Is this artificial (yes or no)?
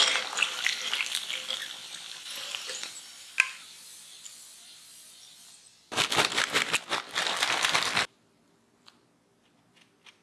no